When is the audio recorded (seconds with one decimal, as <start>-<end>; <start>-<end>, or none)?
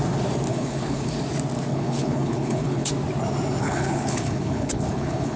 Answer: 0.0-0.5; 1.1-1.7; 2.9-3.6